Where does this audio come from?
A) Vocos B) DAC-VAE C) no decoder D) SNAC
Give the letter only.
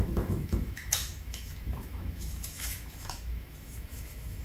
B